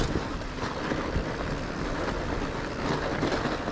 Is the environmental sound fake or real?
real